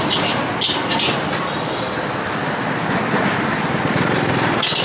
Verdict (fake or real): real